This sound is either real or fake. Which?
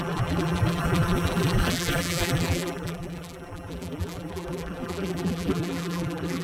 fake